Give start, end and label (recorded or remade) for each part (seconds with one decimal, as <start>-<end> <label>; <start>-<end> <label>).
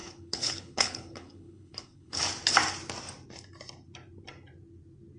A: 0.0-2.2 remade; 2.2-5.2 recorded